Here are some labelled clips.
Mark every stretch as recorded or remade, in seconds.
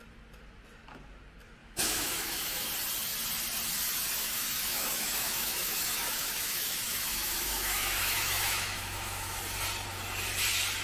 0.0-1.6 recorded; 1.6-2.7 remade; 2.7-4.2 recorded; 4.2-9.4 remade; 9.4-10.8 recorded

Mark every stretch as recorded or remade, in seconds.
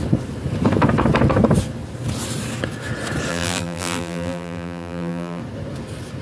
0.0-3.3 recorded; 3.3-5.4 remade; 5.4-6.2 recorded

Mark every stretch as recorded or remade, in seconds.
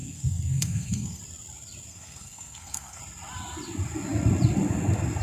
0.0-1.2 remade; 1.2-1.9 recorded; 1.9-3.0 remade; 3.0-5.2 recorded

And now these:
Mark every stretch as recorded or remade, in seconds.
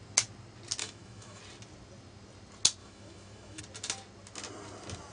0.0-0.8 recorded; 0.8-1.4 remade; 1.4-2.8 recorded; 2.8-3.6 remade; 3.6-5.1 recorded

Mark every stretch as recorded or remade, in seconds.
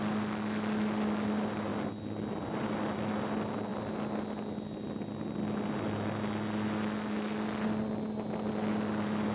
0.0-9.3 recorded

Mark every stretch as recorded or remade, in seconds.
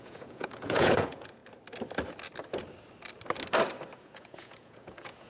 0.0-1.4 remade; 1.4-4.0 recorded; 4.0-5.3 remade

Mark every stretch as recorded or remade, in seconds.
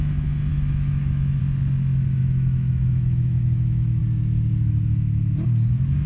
0.0-0.5 recorded; 0.5-1.4 remade; 1.4-2.2 recorded; 2.2-4.0 remade; 4.0-6.1 recorded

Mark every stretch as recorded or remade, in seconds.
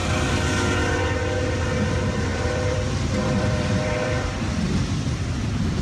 0.0-2.3 recorded; 2.3-5.8 remade